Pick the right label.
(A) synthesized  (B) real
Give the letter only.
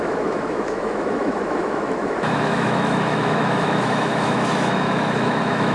A